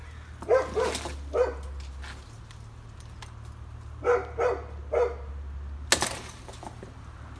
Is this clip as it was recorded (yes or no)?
yes